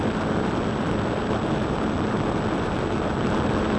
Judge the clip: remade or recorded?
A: recorded